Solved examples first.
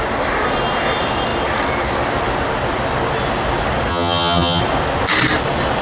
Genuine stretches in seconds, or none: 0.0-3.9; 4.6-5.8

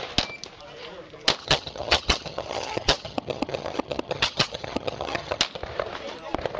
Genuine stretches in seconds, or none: 0.0-1.4; 5.4-6.6

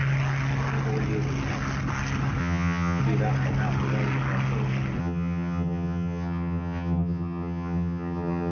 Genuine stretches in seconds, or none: 0.0-2.4; 3.0-5.0

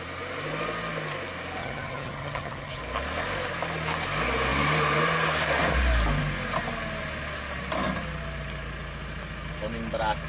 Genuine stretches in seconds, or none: 0.0-1.6; 2.8-10.3

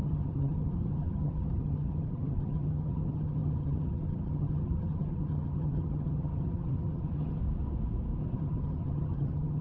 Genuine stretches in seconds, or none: 7.4-8.2

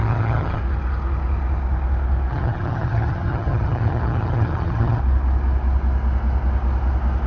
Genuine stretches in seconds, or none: 0.6-2.3; 5.0-7.3